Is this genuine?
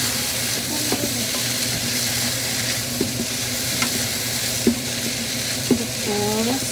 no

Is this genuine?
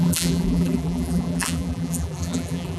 no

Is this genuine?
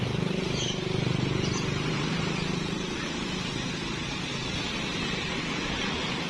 no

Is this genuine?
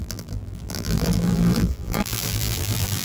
no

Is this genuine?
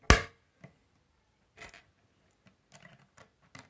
yes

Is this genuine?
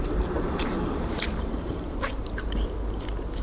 no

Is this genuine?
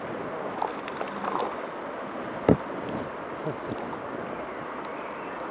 yes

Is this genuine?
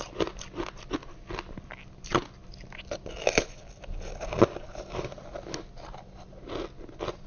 yes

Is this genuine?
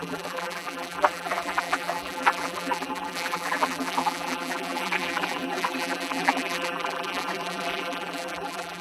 no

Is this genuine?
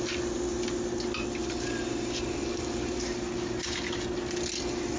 yes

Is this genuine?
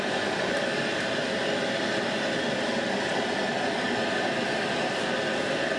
yes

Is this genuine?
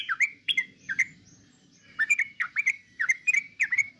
no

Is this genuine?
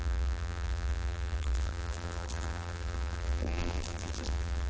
no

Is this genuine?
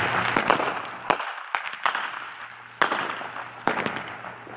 yes